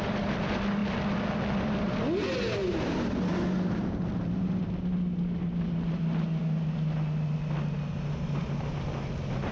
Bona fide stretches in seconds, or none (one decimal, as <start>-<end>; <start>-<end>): 0.0-9.5